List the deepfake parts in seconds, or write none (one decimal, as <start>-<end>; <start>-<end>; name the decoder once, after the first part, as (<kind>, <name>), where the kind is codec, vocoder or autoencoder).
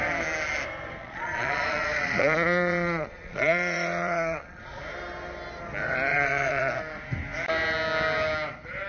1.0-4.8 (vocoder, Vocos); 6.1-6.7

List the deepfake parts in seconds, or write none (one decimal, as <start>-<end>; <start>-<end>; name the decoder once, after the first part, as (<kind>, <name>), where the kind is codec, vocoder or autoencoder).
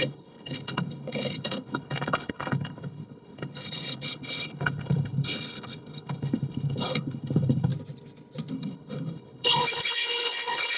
0.0-7.7 (codec, HILCodec); 8.5-10.8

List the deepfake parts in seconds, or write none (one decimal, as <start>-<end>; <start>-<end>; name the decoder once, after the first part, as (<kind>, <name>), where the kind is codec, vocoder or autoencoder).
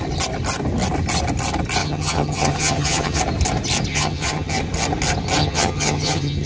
1.8-3.2 (vocoder, HiFi-GAN); 3.9-4.6; 5.4-6.5